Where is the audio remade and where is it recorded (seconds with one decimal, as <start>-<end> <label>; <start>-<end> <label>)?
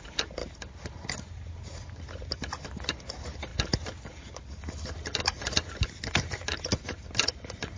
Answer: 0.0-7.8 recorded